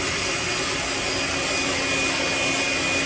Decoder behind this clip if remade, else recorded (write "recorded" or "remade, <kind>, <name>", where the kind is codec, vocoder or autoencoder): recorded